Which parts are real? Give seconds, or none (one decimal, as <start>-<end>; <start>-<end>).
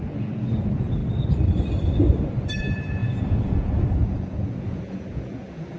1.0-2.6